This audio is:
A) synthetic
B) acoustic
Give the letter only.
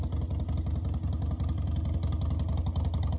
B